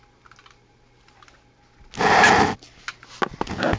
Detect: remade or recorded recorded